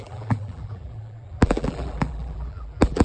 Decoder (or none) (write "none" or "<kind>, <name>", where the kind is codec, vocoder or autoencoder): vocoder, BigVGAN v2